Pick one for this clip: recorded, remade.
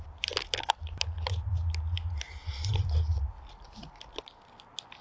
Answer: recorded